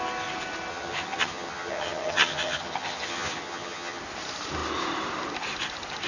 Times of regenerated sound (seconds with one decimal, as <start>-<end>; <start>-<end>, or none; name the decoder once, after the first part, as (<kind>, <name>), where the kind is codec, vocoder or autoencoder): 0.7-4.0 (vocoder, HiFi-GAN)